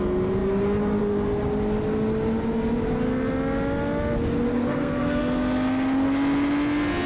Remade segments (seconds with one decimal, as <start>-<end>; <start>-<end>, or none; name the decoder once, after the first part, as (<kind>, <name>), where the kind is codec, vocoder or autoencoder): 4.5-5.2 (codec, SNAC)